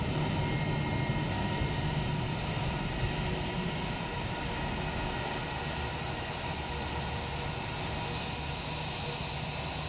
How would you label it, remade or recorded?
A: recorded